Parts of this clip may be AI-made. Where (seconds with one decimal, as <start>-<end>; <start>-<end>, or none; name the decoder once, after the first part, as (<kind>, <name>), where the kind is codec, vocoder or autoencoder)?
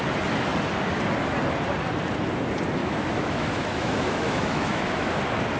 2.8-5.1 (autoencoder, DAC-VAE)